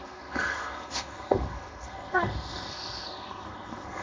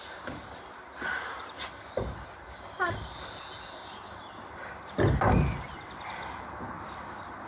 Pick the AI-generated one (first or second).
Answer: first